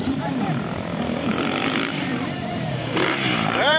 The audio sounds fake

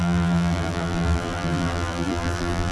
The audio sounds fake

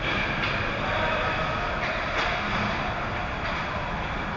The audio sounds real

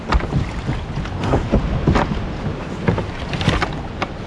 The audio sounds real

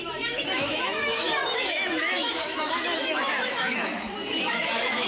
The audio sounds fake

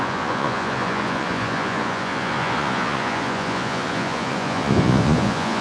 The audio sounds fake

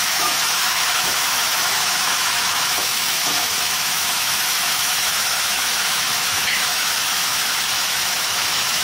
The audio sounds fake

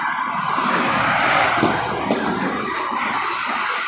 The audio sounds fake